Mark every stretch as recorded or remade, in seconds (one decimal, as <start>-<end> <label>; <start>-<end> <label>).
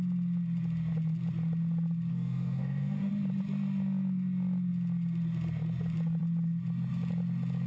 0.0-2.1 recorded; 2.1-3.1 remade; 3.1-7.7 recorded